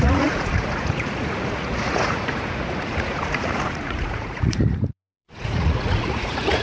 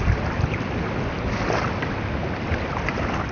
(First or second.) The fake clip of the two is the first